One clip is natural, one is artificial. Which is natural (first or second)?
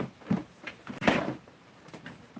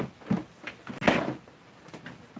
second